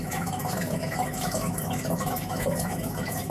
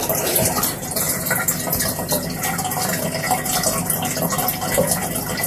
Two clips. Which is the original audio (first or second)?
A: second